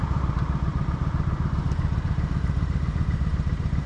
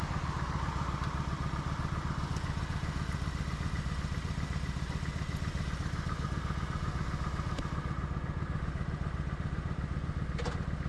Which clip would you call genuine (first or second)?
second